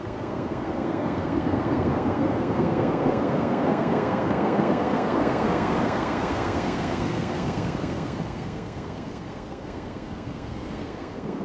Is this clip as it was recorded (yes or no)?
no